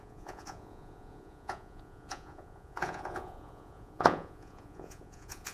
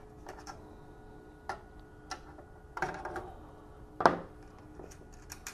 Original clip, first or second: second